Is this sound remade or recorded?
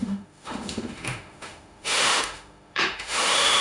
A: remade